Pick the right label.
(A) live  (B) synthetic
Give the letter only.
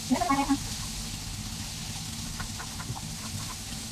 A